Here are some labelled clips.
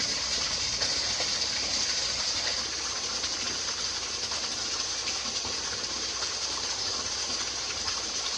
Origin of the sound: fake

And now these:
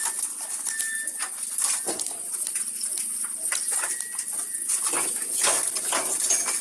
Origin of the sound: real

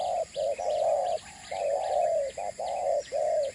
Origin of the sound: real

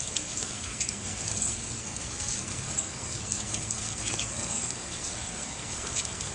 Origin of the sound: fake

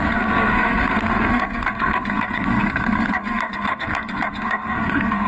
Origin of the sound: fake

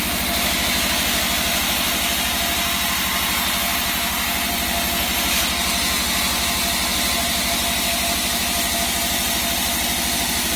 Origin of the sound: real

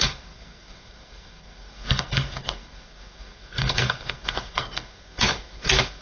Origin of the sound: fake